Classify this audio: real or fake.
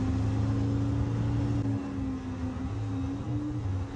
real